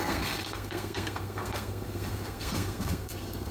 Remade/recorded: remade